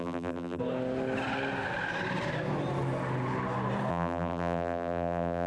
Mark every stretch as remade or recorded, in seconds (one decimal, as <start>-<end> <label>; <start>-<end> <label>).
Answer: 0.0-0.6 remade; 0.6-3.9 recorded; 3.9-5.5 remade